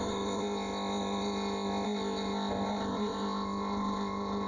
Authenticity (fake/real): fake